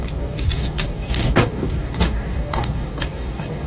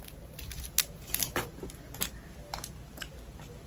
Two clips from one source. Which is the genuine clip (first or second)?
second